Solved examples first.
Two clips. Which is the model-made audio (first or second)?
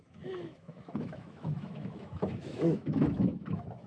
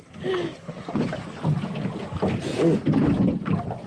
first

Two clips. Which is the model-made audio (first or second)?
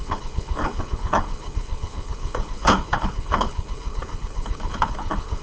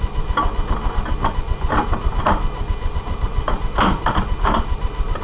first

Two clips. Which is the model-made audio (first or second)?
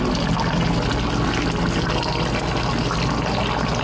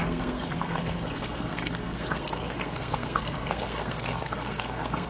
second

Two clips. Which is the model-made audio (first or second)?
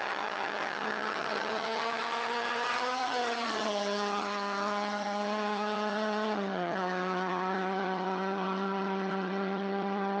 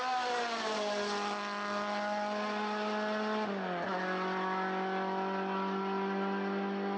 first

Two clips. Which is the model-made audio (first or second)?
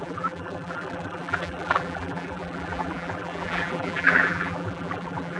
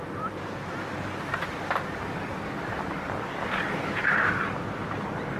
first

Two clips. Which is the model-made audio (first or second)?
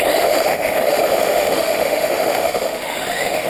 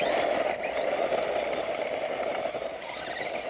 first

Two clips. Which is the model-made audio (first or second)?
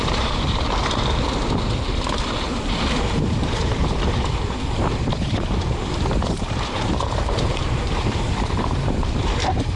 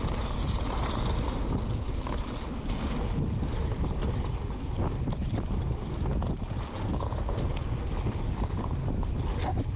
first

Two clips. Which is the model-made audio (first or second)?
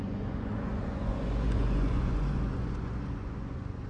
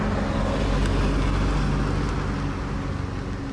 first